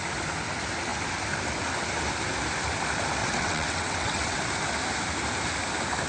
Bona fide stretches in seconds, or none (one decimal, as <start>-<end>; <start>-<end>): 0.0-3.2; 4.4-6.1